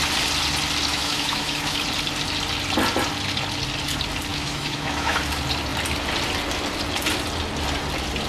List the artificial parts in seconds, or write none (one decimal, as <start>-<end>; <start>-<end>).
0.9-1.8; 4.3-5.2